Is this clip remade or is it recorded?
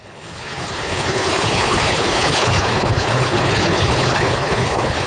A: remade